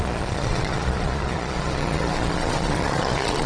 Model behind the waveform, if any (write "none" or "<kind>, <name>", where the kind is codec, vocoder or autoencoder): vocoder, Vocos